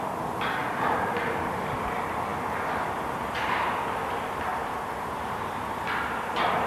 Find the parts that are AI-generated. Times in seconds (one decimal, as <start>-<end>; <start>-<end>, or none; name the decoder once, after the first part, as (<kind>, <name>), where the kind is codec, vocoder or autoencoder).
0.6-1.8 (vocoder, BigVGAN v2); 4.5-5.7